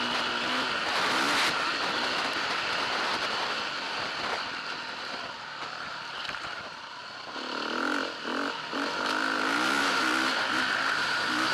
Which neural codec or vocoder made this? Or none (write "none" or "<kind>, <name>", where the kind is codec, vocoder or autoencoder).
none